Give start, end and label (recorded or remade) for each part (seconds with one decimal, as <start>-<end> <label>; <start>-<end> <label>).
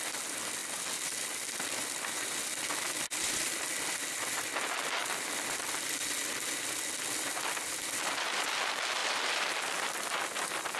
0.0-9.0 recorded; 9.0-9.5 remade; 9.5-10.8 recorded